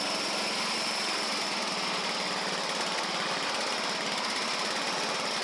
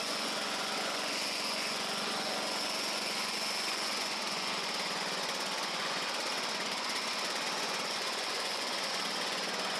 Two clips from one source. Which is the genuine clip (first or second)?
first